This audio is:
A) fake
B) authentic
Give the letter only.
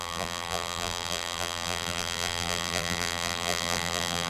A